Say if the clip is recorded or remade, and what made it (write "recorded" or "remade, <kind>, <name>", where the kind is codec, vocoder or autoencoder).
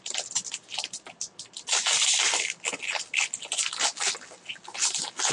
recorded